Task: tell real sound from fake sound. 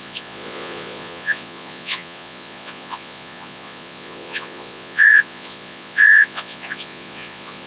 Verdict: fake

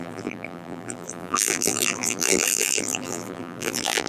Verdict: fake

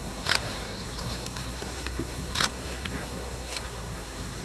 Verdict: fake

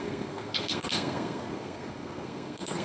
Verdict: fake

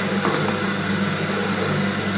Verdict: real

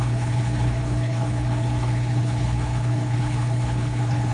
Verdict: fake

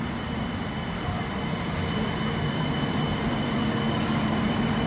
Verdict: real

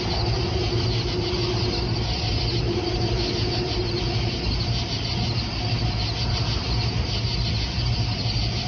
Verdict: real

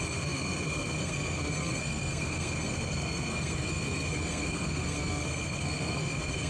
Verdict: fake